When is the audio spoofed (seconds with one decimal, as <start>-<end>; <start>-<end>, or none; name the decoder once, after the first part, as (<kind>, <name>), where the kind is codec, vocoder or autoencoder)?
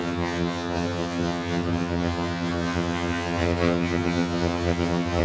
0.0-5.2 (vocoder, HiFi-GAN)